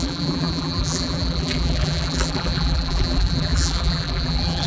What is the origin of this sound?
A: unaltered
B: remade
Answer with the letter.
B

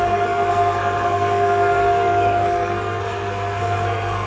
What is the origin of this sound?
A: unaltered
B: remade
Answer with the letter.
B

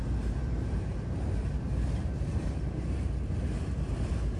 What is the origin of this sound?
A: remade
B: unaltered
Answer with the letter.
B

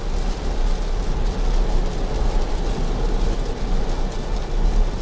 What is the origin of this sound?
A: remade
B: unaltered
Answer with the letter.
B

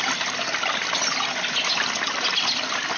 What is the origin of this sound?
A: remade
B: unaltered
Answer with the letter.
B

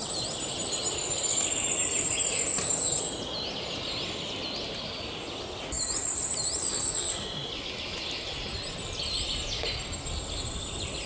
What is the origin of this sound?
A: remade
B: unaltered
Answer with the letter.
B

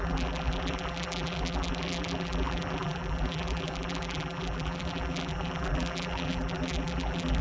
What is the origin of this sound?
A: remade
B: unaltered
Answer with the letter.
A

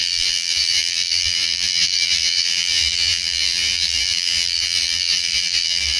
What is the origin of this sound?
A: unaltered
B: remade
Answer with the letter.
B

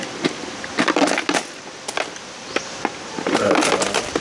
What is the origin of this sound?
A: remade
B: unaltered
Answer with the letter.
B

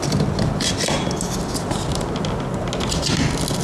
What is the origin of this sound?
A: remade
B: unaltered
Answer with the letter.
B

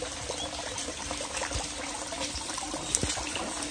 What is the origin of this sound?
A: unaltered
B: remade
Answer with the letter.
A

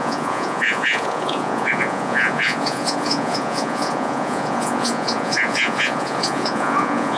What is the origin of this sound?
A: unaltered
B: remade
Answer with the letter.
B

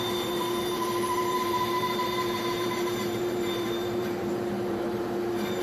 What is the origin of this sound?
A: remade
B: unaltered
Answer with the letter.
A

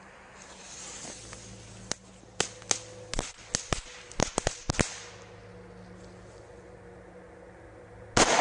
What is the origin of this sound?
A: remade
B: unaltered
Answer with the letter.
B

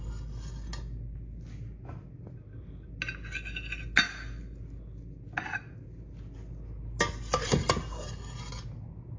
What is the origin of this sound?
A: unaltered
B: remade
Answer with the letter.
A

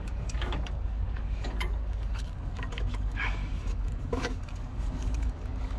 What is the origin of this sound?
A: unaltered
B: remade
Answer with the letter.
B